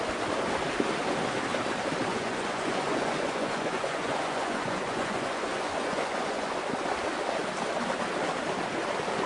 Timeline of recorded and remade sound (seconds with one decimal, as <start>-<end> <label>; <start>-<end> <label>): 0.0-2.1 recorded; 2.1-6.6 remade; 6.6-9.3 recorded